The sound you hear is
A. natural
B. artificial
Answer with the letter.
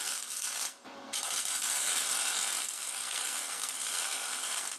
B